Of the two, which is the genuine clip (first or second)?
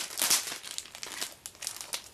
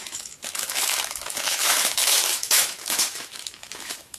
first